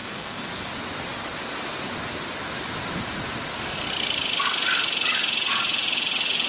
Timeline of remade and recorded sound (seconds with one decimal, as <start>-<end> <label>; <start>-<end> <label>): 0.0-0.5 remade; 0.5-6.5 recorded